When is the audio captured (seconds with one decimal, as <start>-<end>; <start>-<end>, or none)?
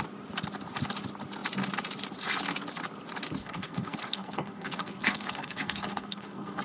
0.0-3.4